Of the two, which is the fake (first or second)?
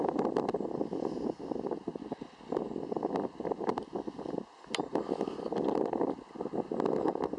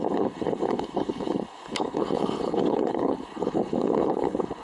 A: second